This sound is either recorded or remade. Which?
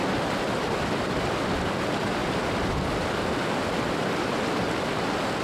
recorded